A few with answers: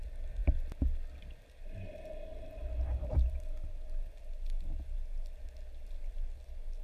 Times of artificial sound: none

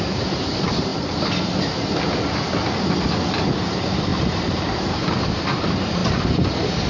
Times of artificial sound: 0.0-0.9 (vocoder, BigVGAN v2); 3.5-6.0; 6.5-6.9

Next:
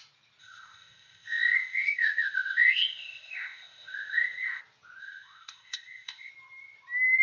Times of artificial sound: 0.4-4.6 (codec, ZipCodec); 5.0-6.3

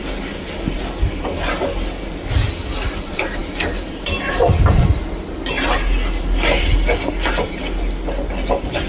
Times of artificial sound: none

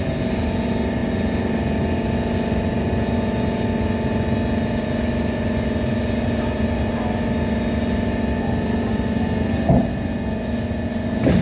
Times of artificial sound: none